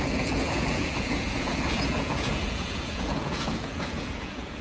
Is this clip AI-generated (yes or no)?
yes